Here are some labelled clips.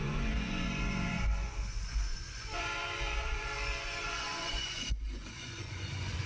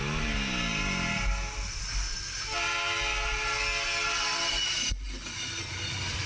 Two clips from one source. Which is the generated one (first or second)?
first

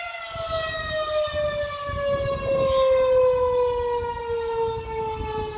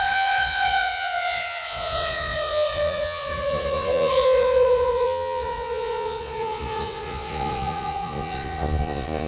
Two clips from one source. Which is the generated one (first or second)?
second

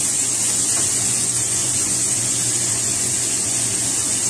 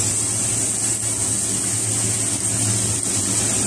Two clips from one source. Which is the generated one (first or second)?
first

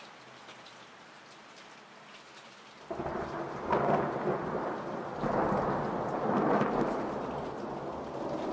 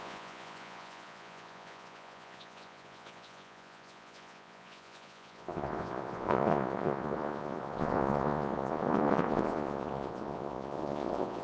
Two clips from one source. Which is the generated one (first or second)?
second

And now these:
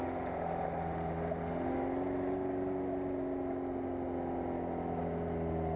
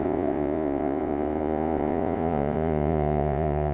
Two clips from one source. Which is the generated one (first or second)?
second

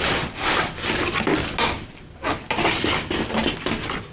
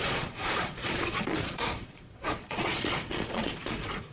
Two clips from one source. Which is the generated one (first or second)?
second